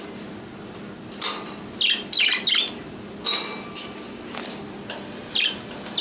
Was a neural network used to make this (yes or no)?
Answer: no